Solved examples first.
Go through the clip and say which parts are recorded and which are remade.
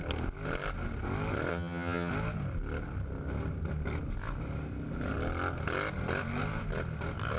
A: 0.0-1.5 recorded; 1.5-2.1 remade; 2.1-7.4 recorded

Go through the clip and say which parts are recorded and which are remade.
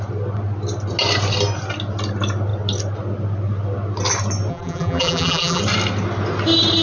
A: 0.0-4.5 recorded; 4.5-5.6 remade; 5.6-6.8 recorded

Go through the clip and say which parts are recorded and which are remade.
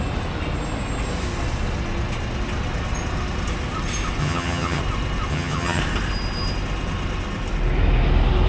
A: 0.0-4.2 recorded; 4.2-4.8 remade; 4.8-5.3 recorded; 5.3-5.8 remade; 5.8-8.5 recorded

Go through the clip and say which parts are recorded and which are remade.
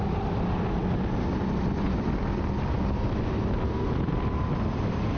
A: 0.0-5.2 recorded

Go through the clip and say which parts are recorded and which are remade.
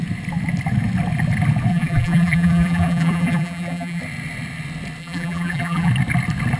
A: 0.0-1.7 recorded; 1.7-4.0 remade; 4.0-5.0 recorded; 5.0-5.9 remade; 5.9-6.6 recorded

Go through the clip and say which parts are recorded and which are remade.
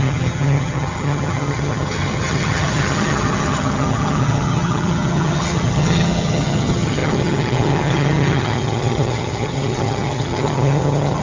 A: 0.0-11.2 remade